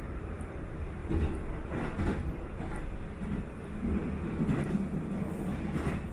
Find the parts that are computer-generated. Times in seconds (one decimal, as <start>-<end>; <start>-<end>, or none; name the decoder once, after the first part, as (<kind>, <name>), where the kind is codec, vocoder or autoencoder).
none